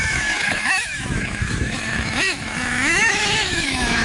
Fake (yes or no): yes